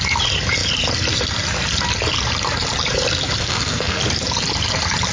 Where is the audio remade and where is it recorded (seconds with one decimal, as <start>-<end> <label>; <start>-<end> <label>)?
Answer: 0.0-3.4 recorded; 3.4-4.0 remade; 4.0-5.1 recorded